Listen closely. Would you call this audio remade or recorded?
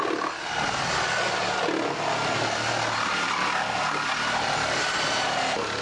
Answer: recorded